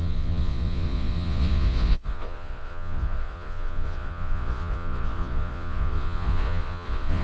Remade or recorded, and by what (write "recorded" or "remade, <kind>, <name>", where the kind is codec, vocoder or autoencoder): remade, vocoder, Vocos